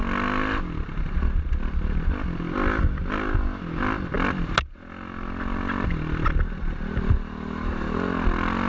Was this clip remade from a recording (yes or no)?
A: no